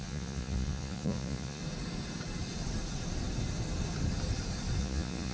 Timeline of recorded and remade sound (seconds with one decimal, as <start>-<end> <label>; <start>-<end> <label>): 0.0-1.6 remade; 1.6-4.8 recorded; 4.8-5.3 remade